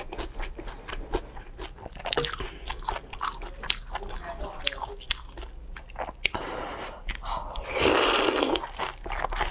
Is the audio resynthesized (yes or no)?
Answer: no